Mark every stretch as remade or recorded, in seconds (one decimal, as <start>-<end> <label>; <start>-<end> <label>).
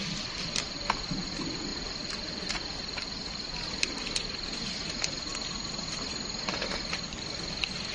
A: 0.0-7.9 recorded